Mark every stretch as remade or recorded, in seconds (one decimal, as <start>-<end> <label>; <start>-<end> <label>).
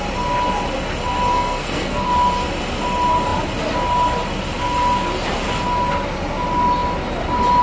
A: 0.0-1.3 recorded; 1.3-2.1 remade; 2.1-7.6 recorded